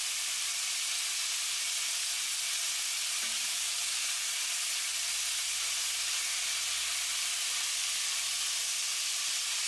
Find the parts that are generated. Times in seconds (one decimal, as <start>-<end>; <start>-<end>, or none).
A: 0.0-0.5; 5.6-9.7